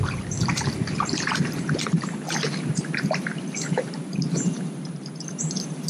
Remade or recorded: remade